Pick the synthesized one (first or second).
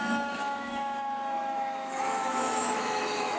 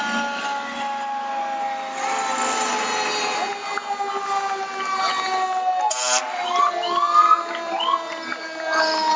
first